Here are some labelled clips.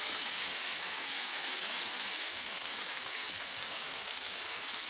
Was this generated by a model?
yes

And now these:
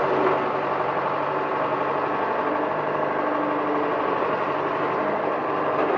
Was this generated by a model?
no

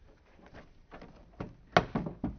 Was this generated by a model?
no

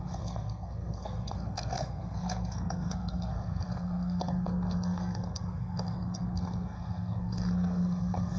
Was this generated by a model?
yes